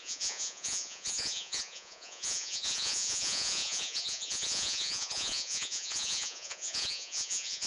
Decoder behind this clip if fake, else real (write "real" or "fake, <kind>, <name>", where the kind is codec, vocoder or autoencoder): fake, vocoder, Vocos